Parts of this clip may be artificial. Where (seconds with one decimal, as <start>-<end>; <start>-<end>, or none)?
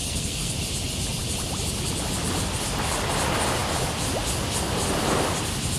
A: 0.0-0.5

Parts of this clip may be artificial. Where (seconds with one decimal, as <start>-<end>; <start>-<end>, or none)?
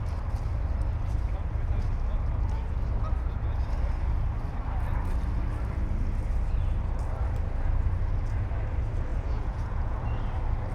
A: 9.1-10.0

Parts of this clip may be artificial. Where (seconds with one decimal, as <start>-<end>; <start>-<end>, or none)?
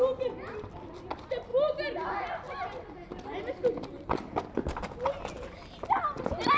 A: none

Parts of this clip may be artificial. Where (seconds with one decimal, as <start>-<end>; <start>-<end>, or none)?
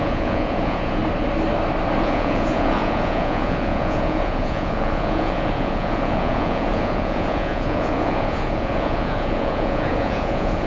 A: 0.0-1.0; 2.0-10.7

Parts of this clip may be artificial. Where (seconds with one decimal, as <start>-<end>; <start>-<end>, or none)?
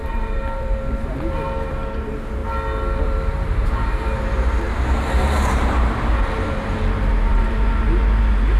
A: 0.0-2.4; 3.0-8.6